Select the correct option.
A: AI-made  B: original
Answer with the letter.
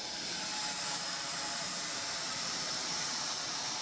A